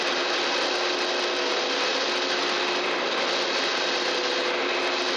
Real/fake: real